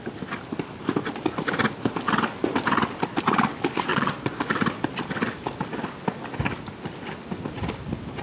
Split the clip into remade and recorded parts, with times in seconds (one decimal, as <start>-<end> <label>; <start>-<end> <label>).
0.0-3.9 recorded; 3.9-4.5 remade; 4.5-8.2 recorded